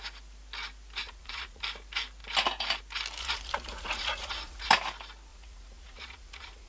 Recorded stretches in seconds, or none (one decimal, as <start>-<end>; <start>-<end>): 0.0-1.0; 1.6-3.2; 4.7-5.3